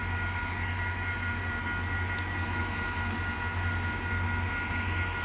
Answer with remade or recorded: recorded